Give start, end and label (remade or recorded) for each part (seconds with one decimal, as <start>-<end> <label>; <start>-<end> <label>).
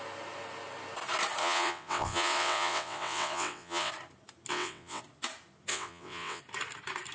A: 0.0-1.4 recorded; 1.4-3.9 remade; 3.9-4.5 recorded; 4.5-5.0 remade; 5.0-5.7 recorded; 5.7-6.4 remade; 6.4-7.1 recorded